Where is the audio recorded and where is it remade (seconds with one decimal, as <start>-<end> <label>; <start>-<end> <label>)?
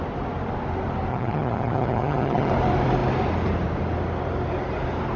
0.0-1.1 recorded; 1.1-2.5 remade; 2.5-5.2 recorded